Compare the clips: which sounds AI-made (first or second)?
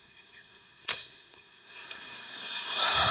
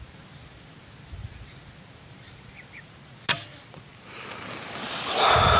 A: first